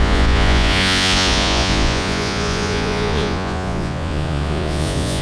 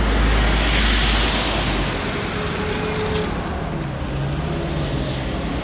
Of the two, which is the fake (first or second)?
first